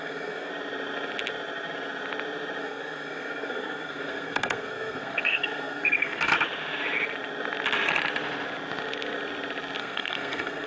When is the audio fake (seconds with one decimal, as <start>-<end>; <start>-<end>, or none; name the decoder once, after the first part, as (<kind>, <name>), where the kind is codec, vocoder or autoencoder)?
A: 0.0-0.5 (codec, SNAC); 2.6-6.3; 9.8-10.7